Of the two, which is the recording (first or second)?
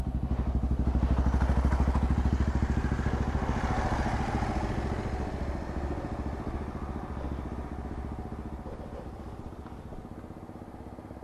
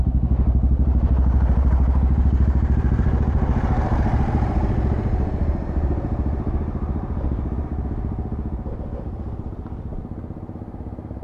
first